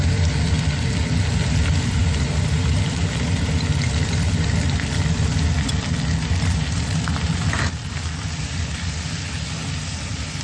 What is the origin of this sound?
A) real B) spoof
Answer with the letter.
A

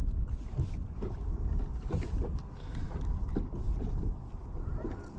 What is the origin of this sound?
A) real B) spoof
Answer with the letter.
A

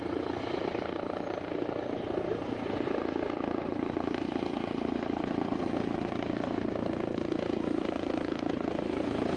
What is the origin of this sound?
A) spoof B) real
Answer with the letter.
B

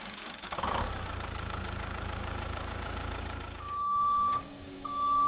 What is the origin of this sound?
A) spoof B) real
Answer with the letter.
A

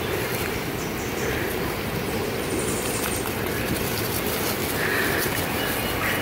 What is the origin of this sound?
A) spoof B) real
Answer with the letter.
B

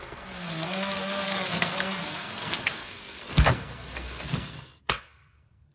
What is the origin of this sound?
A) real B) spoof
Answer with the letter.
B